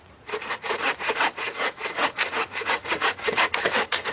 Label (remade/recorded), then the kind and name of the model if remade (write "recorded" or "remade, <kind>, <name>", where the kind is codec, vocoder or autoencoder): remade, vocoder, Vocos